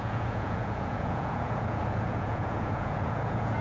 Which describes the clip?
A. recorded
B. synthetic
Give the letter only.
B